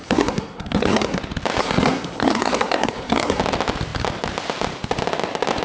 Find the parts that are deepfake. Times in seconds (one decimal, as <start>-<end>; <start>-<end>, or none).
0.0-1.2; 1.6-3.4